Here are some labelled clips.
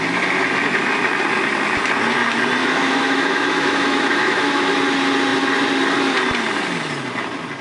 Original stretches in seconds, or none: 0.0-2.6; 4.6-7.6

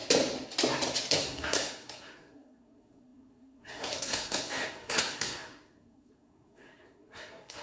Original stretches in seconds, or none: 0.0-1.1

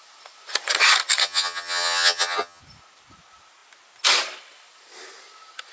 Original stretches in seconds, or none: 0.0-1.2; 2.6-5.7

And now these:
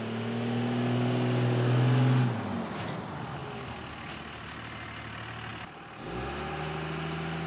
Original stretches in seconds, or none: 0.0-7.5

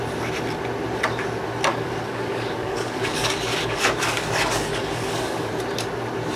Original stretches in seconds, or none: 0.0-1.7; 5.5-6.4